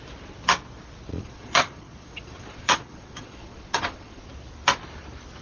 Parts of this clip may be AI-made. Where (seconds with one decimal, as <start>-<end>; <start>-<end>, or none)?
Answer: 1.1-4.3